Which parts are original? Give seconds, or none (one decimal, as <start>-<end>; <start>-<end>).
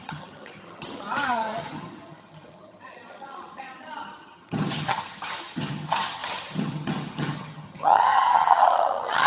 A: none